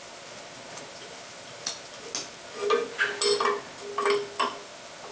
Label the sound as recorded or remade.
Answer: recorded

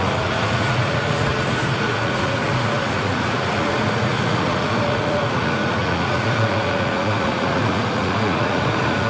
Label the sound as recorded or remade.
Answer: remade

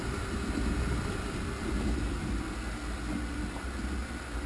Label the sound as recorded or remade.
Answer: recorded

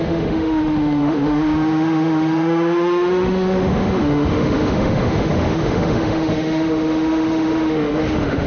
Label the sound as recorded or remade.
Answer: remade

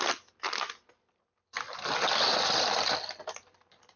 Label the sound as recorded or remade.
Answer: recorded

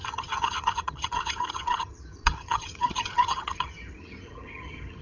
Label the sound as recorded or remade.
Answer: remade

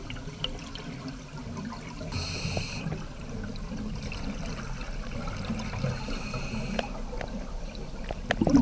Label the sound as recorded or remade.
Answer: recorded